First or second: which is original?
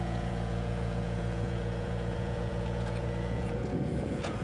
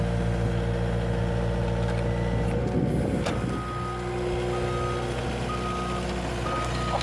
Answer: second